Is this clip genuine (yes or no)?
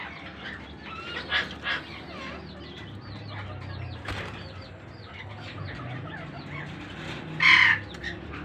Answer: yes